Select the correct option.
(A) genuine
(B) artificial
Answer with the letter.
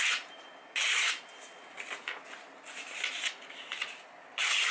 A